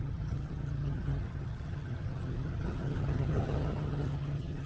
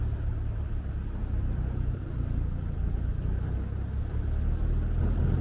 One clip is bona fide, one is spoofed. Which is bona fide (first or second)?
second